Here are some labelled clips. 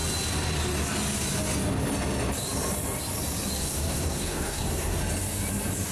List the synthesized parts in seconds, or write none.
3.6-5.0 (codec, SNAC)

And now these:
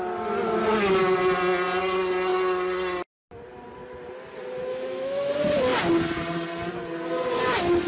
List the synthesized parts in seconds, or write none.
4.7-5.3 (autoencoder, DAC-VAE)

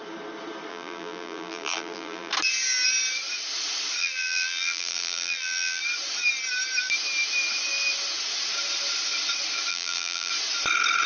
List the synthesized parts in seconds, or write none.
0.7-2.3 (vocoder, BigVGAN v2); 4.0-5.8; 9.7-10.3

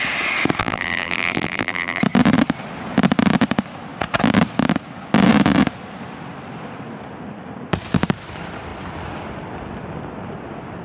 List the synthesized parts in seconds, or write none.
0.6-2.0 (vocoder, BigVGAN v2)

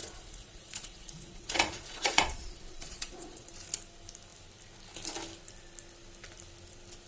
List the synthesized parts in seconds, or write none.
0.0-3.5 (vocoder, Vocos)

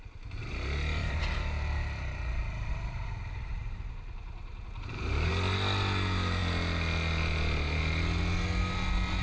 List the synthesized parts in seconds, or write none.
1.0-3.1 (vocoder, BigVGAN v2); 3.5-5.3